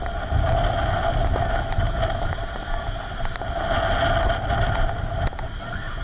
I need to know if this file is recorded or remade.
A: recorded